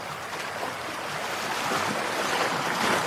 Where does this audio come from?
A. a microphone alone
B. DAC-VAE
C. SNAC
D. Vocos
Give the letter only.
A